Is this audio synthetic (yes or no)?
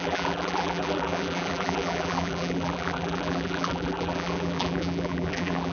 yes